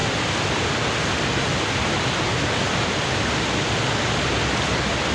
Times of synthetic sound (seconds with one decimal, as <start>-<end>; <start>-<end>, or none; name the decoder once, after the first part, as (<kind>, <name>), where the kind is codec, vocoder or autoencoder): none